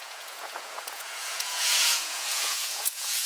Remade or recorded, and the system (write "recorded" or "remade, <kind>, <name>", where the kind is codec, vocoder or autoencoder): remade, vocoder, Vocos